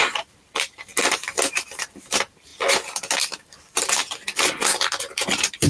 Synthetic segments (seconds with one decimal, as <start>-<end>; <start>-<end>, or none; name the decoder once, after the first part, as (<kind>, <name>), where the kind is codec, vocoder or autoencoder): 0.0-0.9 (vocoder, BigVGAN v2); 1.5-2.5; 3.2-4.0; 5.0-5.7